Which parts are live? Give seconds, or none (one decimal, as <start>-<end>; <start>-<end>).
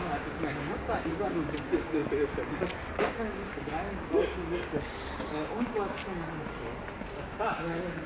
2.0-3.0; 6.0-7.1